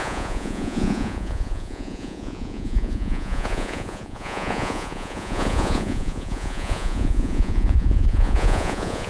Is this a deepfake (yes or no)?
yes